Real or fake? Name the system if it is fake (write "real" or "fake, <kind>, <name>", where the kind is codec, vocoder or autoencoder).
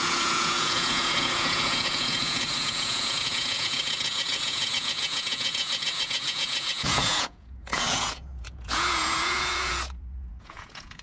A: fake, vocoder, Vocos